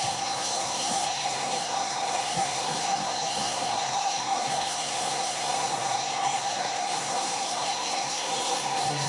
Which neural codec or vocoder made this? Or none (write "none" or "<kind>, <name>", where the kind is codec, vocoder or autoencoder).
codec, SNAC